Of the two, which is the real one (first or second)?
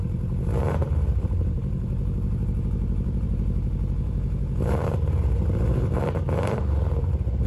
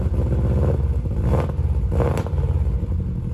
second